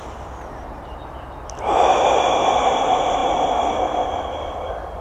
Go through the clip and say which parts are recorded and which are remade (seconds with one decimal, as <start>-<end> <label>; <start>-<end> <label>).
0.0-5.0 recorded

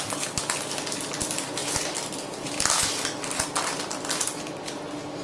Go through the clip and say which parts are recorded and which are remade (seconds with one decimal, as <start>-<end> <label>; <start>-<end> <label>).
0.0-5.2 recorded

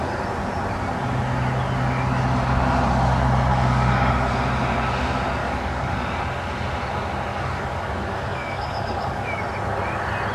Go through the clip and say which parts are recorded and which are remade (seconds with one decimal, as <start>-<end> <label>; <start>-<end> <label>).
0.0-3.5 recorded; 3.5-4.1 remade; 4.1-5.4 recorded; 5.4-6.2 remade; 6.2-7.3 recorded; 7.3-9.4 remade; 9.4-10.3 recorded

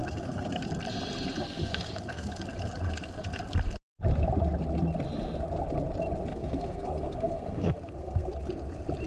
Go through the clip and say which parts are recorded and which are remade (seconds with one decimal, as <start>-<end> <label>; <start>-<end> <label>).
0.0-0.6 remade; 0.6-1.4 recorded; 1.4-2.3 remade; 2.3-6.3 recorded; 6.3-8.3 remade; 8.3-9.1 recorded

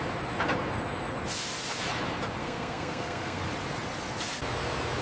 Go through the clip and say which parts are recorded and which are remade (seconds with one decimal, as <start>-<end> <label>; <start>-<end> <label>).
0.0-2.4 recorded; 2.4-3.4 remade; 3.4-5.0 recorded